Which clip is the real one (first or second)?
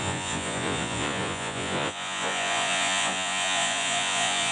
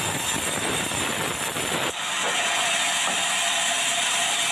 second